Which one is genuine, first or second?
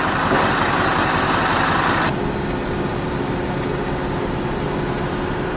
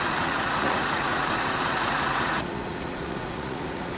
first